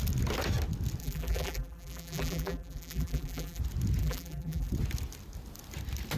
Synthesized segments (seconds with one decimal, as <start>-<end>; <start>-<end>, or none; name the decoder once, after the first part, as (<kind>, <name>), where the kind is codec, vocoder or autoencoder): 1.0-3.6 (vocoder, BigVGAN v2); 4.0-4.7